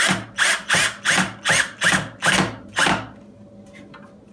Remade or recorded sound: recorded